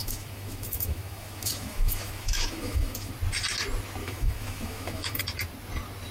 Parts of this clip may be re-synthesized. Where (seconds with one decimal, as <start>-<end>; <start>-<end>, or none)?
0.0-3.1; 4.0-5.2